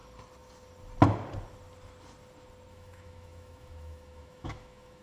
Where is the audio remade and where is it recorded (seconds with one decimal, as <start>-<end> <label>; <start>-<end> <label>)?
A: 0.0-2.7 recorded; 2.7-5.0 remade

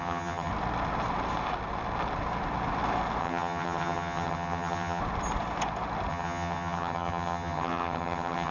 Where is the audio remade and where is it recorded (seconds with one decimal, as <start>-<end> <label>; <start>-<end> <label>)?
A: 0.0-0.5 remade; 0.5-3.2 recorded; 3.2-5.0 remade; 5.0-6.1 recorded; 6.1-8.5 remade

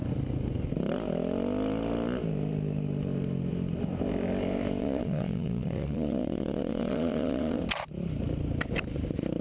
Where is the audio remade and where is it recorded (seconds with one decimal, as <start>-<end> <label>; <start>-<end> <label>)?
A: 0.0-4.8 recorded; 4.8-7.6 remade; 7.6-9.4 recorded

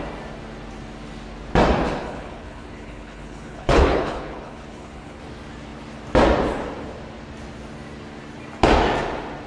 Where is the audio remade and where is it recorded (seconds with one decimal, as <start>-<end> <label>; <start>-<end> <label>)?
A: 0.0-2.0 recorded; 2.0-5.2 remade; 5.2-9.5 recorded

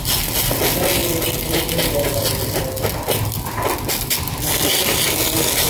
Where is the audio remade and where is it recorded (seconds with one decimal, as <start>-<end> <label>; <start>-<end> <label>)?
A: 0.0-5.7 recorded

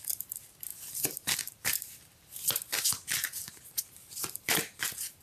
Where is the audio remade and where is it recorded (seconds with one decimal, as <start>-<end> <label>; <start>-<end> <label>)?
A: 0.0-5.2 remade

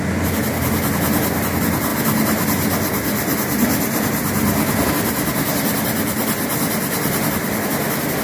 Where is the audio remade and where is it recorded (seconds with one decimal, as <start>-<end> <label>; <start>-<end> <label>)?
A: 0.0-8.2 recorded